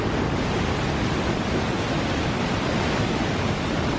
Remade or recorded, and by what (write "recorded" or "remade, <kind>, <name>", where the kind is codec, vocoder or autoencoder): recorded